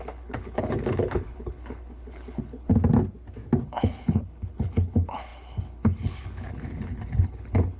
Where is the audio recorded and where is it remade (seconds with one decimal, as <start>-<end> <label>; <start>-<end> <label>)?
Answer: 0.0-2.7 remade; 2.7-3.6 recorded; 3.6-7.8 remade